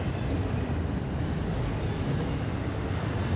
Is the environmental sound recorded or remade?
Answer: recorded